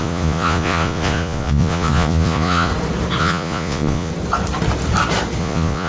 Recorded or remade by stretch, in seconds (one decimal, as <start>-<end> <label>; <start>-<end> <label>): 0.0-2.7 remade; 2.7-3.2 recorded; 3.2-4.1 remade; 4.1-5.4 recorded; 5.4-5.9 remade